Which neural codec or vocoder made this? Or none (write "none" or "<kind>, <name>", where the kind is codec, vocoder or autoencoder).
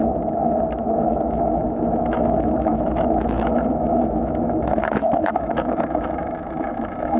autoencoder, DAC-VAE